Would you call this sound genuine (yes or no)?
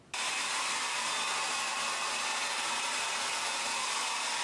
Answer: yes